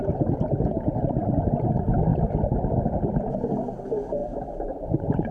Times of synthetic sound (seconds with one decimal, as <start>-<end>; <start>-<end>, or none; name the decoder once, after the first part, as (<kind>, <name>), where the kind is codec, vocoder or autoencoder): 2.1-3.3 (vocoder, BigVGAN v2); 4.2-5.3